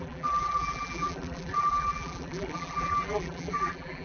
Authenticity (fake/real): fake